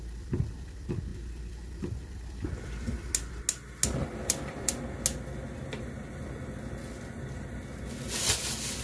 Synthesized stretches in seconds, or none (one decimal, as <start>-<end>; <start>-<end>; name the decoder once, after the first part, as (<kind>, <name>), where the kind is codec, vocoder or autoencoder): 1.1-1.6 (vocoder, BigVGAN v2); 4.0-4.7